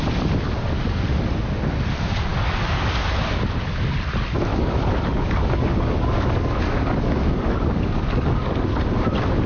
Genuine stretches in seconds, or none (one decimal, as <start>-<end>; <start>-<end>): 0.0-2.3; 2.8-4.5; 8.7-9.5